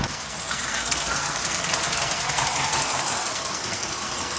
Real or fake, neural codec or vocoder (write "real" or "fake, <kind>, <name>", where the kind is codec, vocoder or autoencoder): fake, codec, SNAC